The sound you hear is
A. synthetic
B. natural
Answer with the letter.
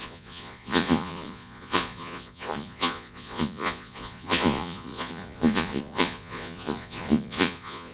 A